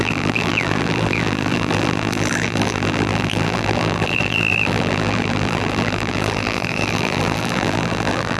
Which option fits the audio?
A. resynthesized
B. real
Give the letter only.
A